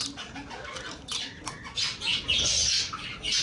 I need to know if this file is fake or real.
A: real